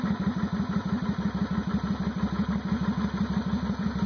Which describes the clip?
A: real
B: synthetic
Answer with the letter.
A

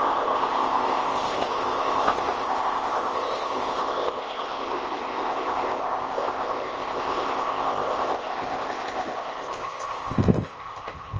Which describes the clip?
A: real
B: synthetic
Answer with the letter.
B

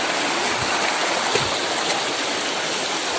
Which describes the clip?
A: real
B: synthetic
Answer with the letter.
A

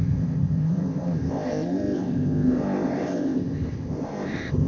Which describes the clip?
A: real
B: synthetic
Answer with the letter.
B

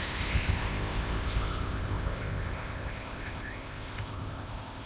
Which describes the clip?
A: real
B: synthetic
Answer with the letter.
B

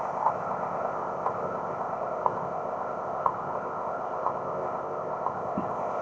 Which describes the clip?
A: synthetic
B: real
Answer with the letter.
A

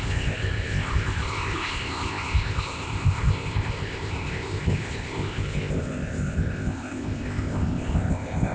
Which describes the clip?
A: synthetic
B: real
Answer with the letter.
A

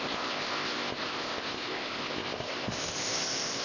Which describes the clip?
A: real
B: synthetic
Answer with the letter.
B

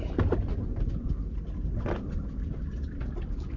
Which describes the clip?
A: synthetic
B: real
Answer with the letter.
B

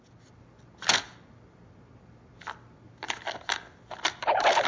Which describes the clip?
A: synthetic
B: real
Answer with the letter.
B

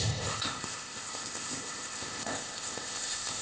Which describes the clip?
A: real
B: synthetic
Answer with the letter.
B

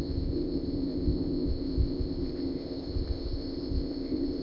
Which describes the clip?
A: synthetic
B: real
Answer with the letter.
A